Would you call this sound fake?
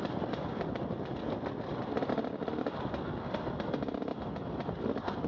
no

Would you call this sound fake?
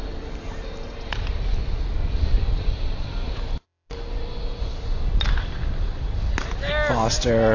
no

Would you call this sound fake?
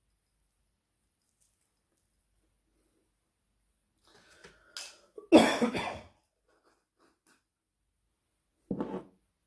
no